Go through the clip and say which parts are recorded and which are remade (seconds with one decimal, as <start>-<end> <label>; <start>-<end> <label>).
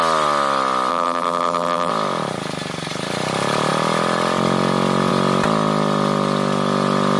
0.0-0.9 recorded; 0.9-1.9 remade; 1.9-7.2 recorded